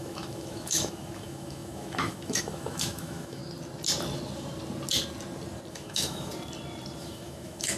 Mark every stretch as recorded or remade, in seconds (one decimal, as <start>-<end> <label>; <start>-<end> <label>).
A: 0.0-3.4 remade; 3.4-5.7 recorded; 5.7-6.3 remade; 6.3-7.0 recorded; 7.0-7.8 remade